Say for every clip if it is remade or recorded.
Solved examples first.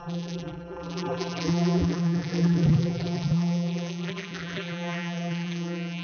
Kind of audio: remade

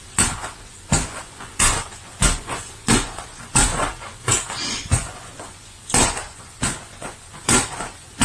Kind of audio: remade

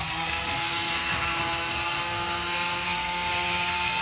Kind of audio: remade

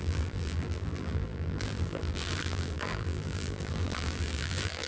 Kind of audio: remade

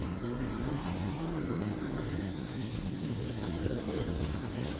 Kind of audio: remade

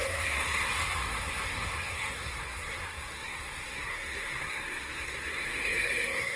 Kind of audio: remade